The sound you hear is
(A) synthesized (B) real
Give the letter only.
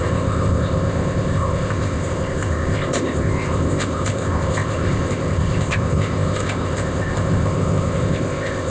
A